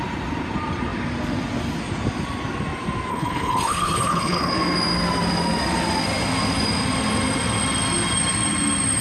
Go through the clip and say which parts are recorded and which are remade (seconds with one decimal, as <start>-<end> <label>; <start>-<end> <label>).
0.0-3.1 recorded; 3.1-4.5 remade; 4.5-9.0 recorded